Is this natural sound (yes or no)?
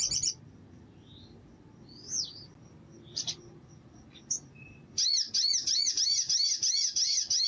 yes